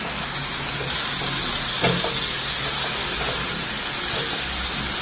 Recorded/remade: recorded